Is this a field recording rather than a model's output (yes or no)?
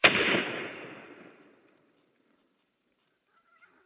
no